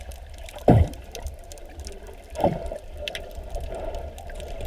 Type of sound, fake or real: fake